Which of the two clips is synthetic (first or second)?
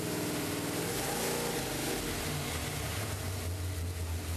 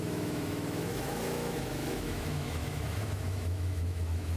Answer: second